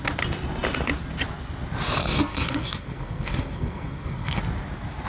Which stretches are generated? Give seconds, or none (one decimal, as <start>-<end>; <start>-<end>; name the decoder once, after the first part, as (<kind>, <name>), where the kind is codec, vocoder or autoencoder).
2.0-4.4 (codec, SNAC)